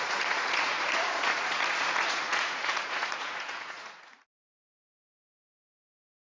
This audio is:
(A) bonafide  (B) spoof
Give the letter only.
B